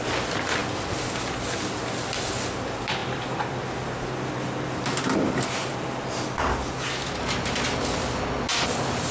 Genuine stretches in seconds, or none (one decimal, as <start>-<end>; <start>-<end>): 0.0-9.1